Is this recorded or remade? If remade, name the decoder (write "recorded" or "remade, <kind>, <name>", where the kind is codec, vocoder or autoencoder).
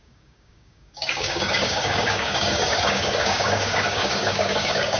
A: remade, codec, DAC